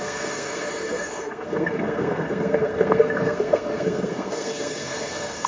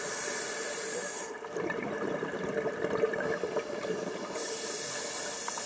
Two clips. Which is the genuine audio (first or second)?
second